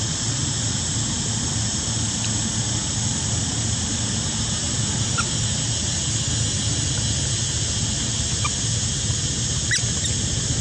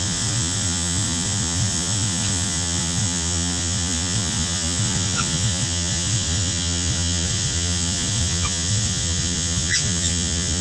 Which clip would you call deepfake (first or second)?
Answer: second